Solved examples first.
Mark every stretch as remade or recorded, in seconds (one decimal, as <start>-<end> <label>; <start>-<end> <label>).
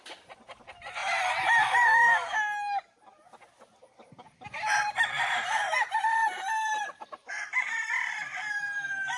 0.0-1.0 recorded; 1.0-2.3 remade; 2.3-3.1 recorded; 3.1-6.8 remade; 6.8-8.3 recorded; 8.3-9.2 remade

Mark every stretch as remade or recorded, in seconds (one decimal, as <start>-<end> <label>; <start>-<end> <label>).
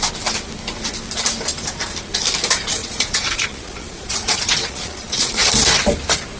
0.0-2.8 recorded; 2.8-5.5 remade; 5.5-6.4 recorded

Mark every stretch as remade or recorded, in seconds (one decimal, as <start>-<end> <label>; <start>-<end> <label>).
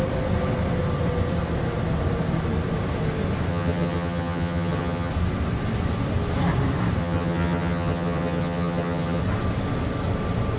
0.0-3.5 recorded; 3.5-5.1 remade; 5.1-7.0 recorded; 7.0-9.2 remade; 9.2-10.6 recorded